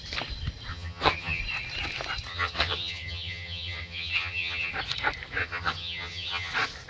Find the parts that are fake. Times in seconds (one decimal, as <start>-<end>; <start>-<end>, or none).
0.7-1.4; 2.3-4.7; 5.4-6.5